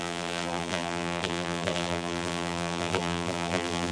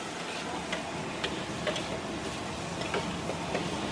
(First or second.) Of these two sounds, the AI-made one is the first